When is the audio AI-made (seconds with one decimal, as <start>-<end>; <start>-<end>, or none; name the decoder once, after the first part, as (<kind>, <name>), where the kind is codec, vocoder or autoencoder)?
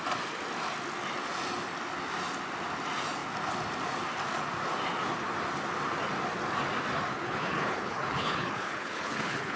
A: 7.1-9.6 (codec, HILCodec)